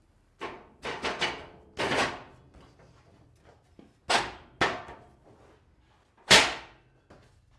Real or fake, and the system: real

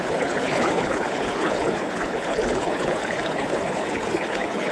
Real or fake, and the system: fake, codec, HILCodec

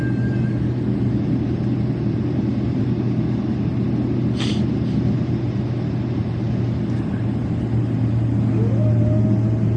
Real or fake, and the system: real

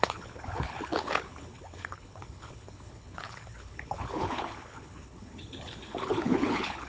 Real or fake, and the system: fake, codec, HILCodec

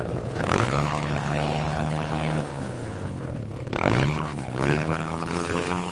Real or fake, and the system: fake, codec, HILCodec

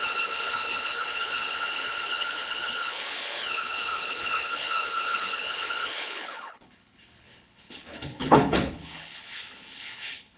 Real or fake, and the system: fake, codec, HILCodec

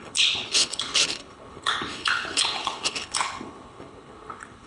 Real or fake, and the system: fake, codec, HILCodec